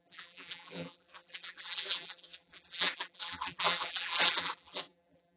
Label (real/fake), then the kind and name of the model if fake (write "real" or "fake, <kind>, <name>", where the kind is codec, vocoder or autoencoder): fake, vocoder, BigVGAN v2